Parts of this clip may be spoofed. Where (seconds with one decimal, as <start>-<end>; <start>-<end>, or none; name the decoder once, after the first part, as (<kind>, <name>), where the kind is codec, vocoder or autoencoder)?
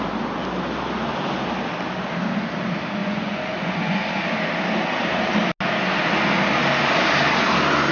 3.0-4.3 (vocoder, Vocos)